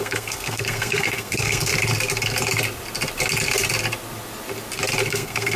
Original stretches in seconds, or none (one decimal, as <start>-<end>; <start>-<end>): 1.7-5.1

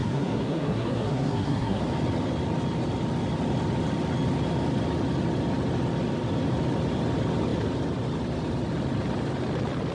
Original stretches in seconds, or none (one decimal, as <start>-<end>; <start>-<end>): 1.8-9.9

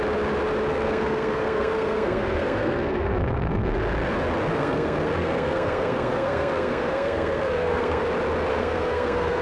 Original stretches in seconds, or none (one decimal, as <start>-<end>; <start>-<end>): 0.0-0.7; 3.7-4.5; 8.0-8.5